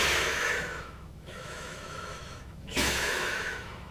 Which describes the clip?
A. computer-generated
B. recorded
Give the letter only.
A